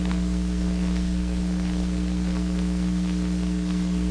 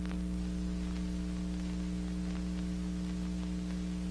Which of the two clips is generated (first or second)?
first